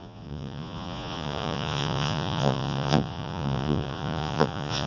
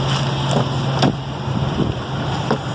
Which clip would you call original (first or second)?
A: second